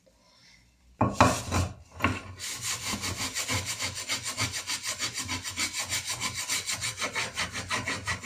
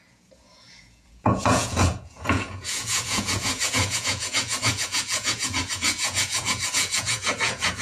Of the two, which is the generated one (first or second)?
second